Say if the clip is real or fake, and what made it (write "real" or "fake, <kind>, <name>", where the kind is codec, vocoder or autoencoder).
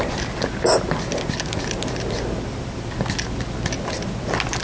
real